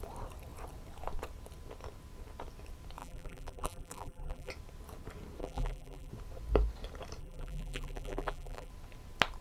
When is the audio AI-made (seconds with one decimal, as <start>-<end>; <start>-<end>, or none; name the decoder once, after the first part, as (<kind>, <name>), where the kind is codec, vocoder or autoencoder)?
3.0-4.5 (vocoder, BigVGAN v2); 5.4-6.1; 7.2-8.7